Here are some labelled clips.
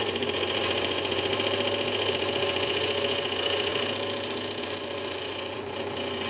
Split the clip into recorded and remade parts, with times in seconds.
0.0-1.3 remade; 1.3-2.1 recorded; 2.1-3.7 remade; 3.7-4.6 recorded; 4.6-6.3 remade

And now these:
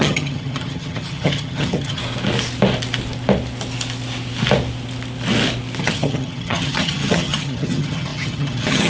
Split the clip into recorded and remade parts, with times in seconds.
0.0-2.0 remade; 2.0-5.8 recorded; 5.8-8.9 remade

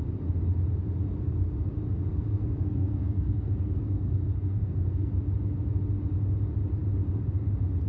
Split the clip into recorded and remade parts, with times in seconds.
0.0-2.1 recorded; 2.1-5.1 remade; 5.1-7.9 recorded

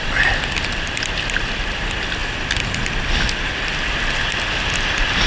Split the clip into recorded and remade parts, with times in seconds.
0.0-5.3 recorded

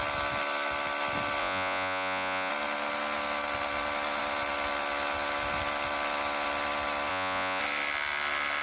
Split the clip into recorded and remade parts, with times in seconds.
0.0-1.4 recorded; 1.4-2.5 remade; 2.5-7.1 recorded; 7.1-7.6 remade; 7.6-8.6 recorded